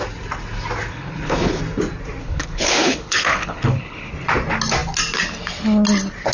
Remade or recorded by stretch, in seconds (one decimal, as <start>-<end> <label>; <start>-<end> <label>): 0.0-0.9 recorded; 0.9-1.6 remade; 1.6-2.2 recorded; 2.2-4.1 remade; 4.1-6.3 recorded